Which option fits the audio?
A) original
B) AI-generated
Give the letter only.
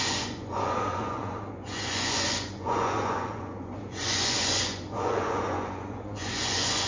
B